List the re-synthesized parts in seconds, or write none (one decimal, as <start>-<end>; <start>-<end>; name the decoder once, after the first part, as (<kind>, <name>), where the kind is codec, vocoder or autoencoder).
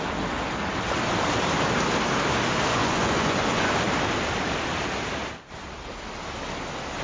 2.7-3.7 (vocoder, Vocos)